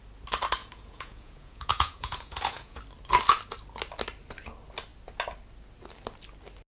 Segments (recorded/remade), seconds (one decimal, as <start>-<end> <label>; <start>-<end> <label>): 0.0-0.6 recorded; 0.6-2.8 remade; 2.8-6.7 recorded